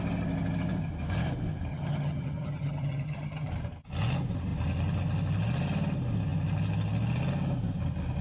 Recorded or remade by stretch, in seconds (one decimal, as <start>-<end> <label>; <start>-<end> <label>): 0.0-1.7 recorded; 1.7-3.5 remade; 3.5-8.2 recorded